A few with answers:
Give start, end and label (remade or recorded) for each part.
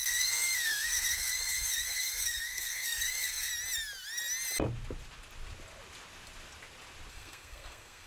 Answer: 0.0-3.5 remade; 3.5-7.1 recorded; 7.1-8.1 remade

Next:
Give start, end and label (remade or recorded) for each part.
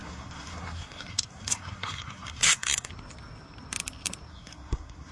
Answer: 0.0-2.9 remade; 2.9-4.3 recorded; 4.3-5.1 remade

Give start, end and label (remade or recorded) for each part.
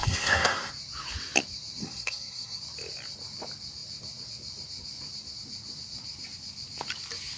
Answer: 0.0-0.7 remade; 0.7-1.8 recorded; 1.8-2.6 remade; 2.6-7.4 recorded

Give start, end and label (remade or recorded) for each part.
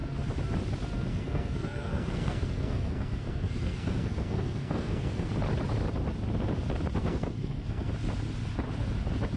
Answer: 0.0-1.1 recorded; 1.1-5.3 remade; 5.3-7.0 recorded; 7.0-7.9 remade; 7.9-9.4 recorded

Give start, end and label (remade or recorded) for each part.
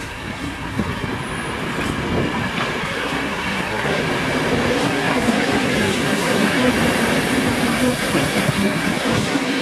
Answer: 0.0-1.1 remade; 1.1-2.8 recorded; 2.8-4.0 remade; 4.0-4.7 recorded; 4.7-6.7 remade; 6.7-7.7 recorded; 7.7-9.6 remade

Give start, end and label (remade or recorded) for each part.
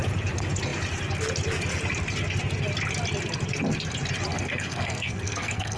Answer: 0.0-4.3 recorded; 4.3-5.8 remade